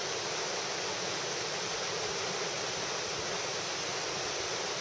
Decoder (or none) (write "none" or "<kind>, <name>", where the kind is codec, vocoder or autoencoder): none